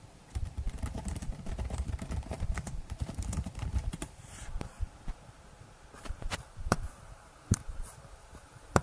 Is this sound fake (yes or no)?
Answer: yes